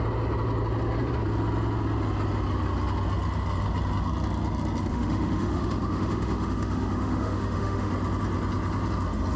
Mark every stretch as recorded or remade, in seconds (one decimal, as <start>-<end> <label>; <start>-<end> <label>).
0.0-4.9 recorded; 4.9-7.9 remade; 7.9-9.4 recorded